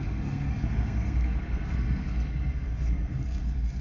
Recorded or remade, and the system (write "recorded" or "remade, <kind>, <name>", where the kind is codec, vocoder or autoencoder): remade, codec, SNAC